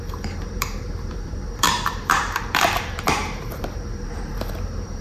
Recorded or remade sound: remade